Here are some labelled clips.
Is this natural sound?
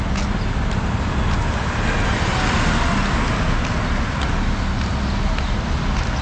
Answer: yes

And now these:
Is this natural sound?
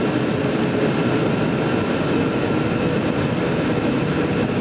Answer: yes